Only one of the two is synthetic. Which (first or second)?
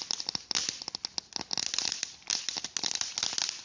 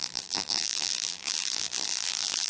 second